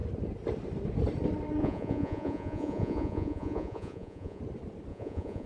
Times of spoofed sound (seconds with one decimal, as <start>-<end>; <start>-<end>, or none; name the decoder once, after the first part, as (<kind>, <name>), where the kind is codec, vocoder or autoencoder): 1.6-4.4 (vocoder, Vocos); 4.9-5.5